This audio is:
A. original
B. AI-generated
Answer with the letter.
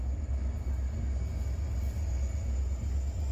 A